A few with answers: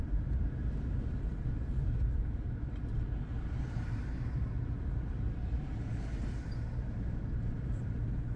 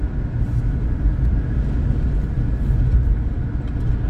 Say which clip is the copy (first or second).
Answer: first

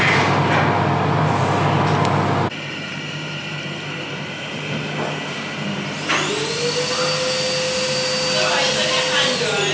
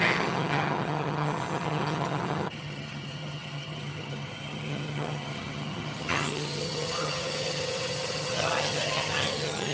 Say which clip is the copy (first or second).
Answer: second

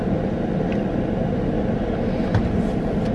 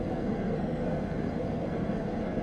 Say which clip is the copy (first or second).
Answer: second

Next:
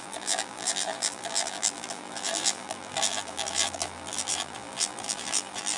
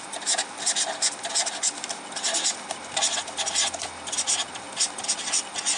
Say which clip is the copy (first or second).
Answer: first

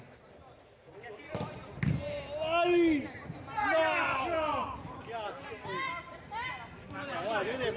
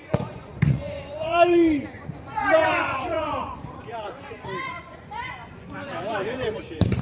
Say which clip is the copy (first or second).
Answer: second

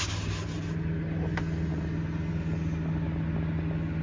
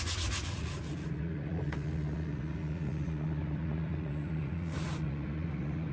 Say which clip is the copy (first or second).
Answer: second